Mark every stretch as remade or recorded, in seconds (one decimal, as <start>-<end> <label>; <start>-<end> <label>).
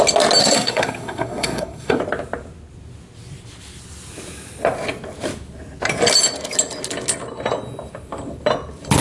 0.0-0.4 recorded; 0.4-2.0 remade; 2.0-9.0 recorded